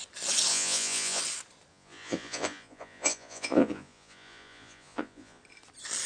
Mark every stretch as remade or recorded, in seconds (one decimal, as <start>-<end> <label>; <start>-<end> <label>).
0.0-0.5 recorded; 0.5-1.2 remade; 1.2-1.7 recorded; 1.7-5.4 remade; 5.4-6.1 recorded